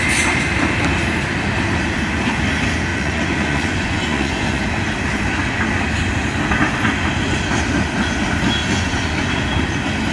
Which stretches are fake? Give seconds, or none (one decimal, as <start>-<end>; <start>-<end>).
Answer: 2.9-4.6; 8.6-9.3